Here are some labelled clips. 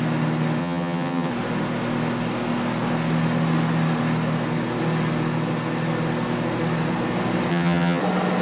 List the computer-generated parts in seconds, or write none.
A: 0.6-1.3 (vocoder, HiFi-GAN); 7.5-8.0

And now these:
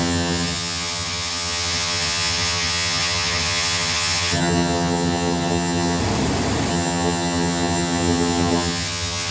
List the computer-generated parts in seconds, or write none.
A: 0.0-6.0 (vocoder, HiFi-GAN); 6.7-9.3

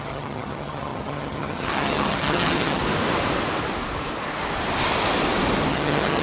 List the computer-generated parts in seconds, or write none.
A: 0.0-2.8 (vocoder, HiFi-GAN); 5.7-6.2